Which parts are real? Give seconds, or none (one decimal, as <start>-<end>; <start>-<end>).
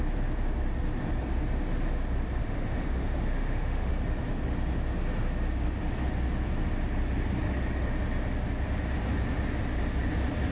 0.0-2.4; 3.9-10.5